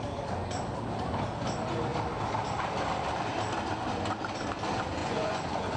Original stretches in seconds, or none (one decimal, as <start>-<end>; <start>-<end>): 0.0-5.0